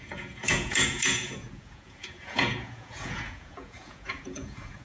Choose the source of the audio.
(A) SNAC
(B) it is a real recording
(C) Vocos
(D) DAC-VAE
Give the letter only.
C